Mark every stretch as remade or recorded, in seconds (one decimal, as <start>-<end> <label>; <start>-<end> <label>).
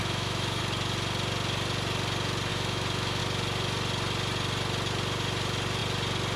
0.0-0.6 remade; 0.6-2.5 recorded; 2.5-3.2 remade; 3.2-6.4 recorded